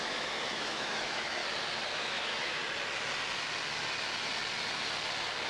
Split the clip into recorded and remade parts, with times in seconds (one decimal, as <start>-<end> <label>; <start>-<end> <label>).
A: 0.0-1.4 remade; 1.4-2.0 recorded; 2.0-2.6 remade; 2.6-5.5 recorded